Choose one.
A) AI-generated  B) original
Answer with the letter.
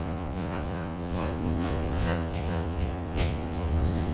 A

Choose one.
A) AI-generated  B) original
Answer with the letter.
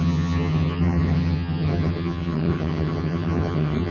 A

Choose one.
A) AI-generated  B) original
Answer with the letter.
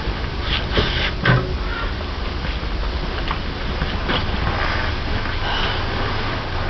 B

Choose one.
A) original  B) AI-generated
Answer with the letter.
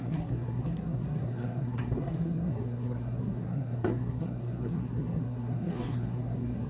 B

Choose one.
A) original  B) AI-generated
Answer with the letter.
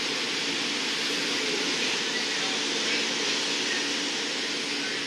A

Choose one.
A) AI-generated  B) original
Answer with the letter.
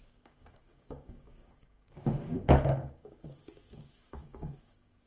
A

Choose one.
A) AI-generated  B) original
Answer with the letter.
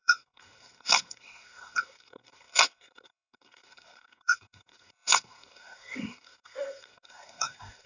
A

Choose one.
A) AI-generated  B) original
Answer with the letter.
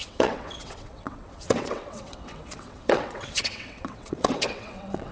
A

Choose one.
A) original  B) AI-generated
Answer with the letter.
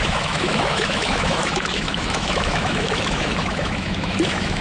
B